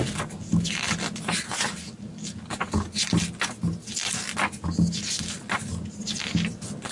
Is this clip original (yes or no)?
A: yes